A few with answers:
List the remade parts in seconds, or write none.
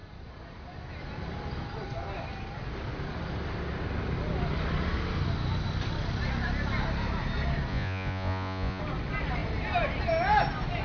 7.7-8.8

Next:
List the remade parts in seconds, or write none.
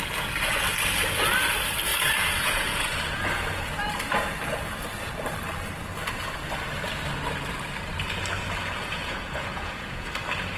1.9-3.7; 8.8-10.1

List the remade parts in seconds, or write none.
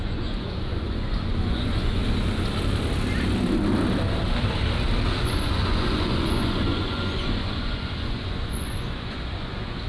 0.0-2.0; 5.2-9.9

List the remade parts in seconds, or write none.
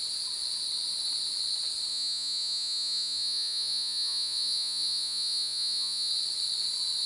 1.9-6.1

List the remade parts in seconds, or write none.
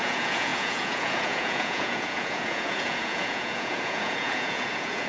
0.0-5.1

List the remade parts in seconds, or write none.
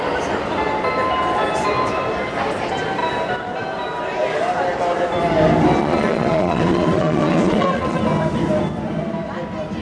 5.8-8.0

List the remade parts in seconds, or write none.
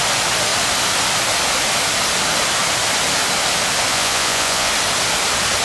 3.9-4.7